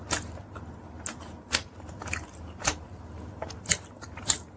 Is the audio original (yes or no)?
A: yes